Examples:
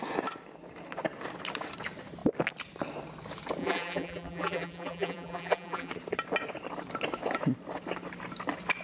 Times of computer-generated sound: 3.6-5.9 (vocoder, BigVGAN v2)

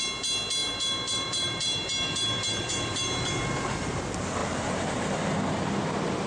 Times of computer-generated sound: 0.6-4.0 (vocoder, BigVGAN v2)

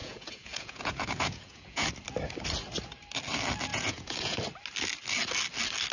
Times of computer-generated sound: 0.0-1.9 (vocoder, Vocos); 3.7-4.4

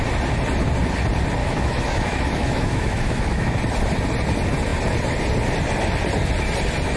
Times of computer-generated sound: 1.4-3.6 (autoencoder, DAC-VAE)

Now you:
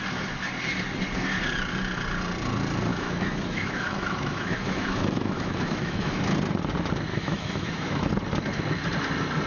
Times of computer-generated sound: 2.9-6.2 (autoencoder, DAC-VAE); 7.1-8.1